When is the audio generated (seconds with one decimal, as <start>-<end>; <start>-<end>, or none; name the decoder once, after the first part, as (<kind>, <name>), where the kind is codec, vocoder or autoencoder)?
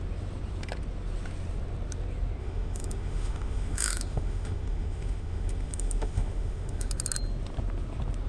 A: 2.4-6.9 (autoencoder, DAC-VAE)